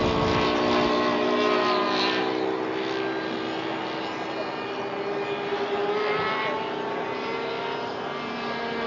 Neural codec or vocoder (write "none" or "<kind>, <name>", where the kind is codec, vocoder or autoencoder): none